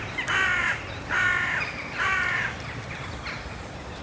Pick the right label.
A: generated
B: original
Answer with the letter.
A